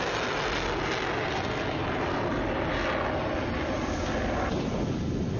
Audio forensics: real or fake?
real